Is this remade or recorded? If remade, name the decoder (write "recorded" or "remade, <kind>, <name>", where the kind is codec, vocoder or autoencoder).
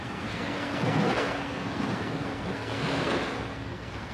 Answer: remade, codec, SNAC